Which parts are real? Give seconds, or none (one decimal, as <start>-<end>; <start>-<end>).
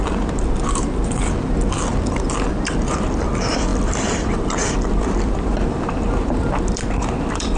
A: none